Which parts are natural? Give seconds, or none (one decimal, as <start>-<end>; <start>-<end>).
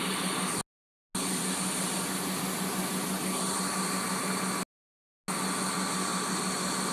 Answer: 0.0-6.9